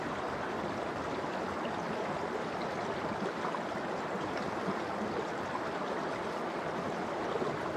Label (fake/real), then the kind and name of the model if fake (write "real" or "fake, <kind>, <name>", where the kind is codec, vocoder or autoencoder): real